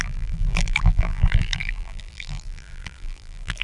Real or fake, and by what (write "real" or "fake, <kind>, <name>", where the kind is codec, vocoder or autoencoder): fake, vocoder, BigVGAN v2